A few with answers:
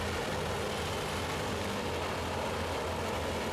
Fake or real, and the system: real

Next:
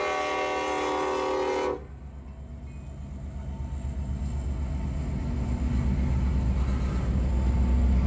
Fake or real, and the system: real